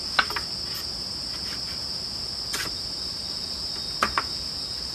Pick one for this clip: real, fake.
real